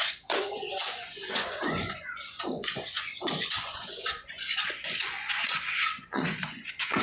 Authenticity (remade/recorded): remade